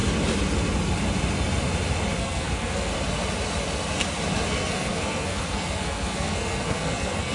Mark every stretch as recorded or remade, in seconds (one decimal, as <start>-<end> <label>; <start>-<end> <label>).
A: 0.0-2.2 recorded; 2.2-2.9 remade; 2.9-4.5 recorded; 4.5-7.3 remade